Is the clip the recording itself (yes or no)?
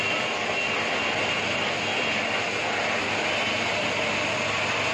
yes